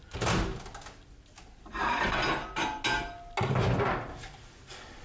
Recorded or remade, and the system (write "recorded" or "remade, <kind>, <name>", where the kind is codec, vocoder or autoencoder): recorded